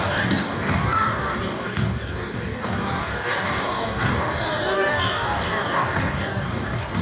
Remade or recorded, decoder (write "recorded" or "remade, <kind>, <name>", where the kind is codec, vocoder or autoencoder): remade, codec, DAC